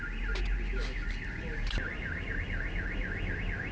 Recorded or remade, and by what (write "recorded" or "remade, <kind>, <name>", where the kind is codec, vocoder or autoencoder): recorded